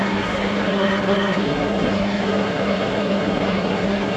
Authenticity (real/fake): fake